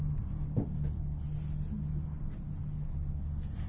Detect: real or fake real